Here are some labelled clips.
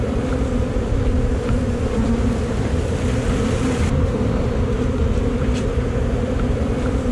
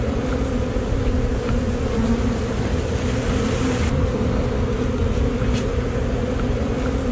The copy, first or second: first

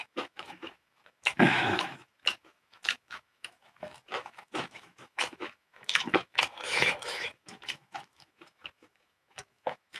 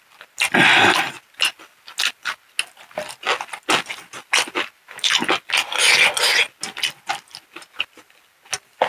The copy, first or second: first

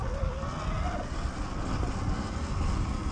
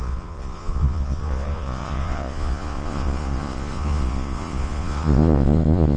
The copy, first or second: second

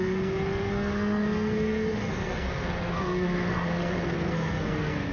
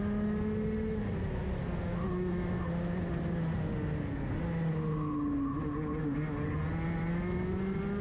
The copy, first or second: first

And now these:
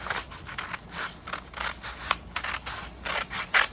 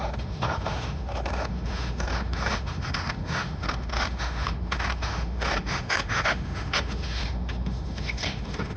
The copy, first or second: second